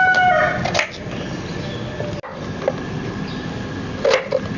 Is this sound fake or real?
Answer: real